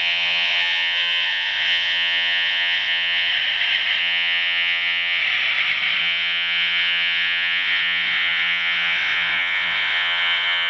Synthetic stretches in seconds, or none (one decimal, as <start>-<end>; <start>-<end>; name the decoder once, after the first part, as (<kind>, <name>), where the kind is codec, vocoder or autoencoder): 0.0-3.3 (vocoder, WaveNeXt); 4.0-5.2; 6.0-10.7